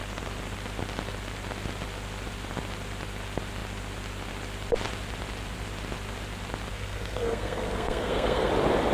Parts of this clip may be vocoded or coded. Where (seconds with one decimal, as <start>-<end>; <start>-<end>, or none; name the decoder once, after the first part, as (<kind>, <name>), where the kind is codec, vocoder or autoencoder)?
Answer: 6.7-8.5 (codec, SNAC)